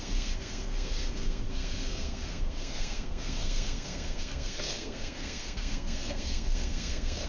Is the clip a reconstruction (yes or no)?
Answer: yes